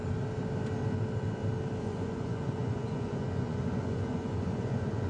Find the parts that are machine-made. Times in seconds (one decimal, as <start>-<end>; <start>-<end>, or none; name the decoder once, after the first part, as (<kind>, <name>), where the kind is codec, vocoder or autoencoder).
1.8-5.1 (vocoder, Vocos)